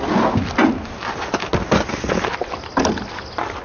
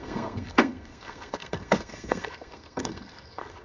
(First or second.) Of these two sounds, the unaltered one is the first